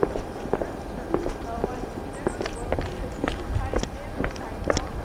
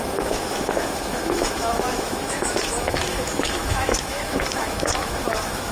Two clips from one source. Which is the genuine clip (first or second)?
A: first